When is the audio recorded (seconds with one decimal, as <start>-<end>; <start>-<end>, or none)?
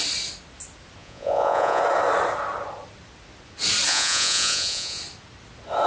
0.0-1.0; 1.8-3.9; 5.0-5.9